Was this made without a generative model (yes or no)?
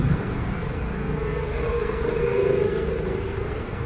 no